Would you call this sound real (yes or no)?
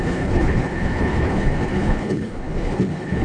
no